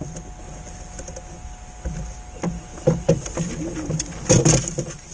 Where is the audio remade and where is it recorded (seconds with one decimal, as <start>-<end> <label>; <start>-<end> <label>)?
0.0-5.1 recorded